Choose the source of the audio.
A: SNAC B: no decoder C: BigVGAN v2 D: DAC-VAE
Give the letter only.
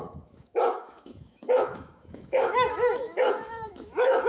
D